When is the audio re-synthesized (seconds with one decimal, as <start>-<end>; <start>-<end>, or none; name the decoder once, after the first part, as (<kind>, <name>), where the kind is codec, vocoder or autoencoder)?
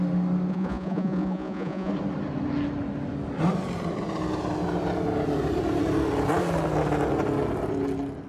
0.5-1.9 (vocoder, Vocos)